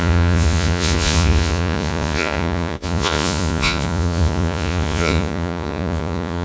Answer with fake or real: fake